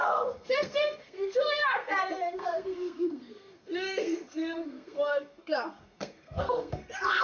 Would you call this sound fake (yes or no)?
yes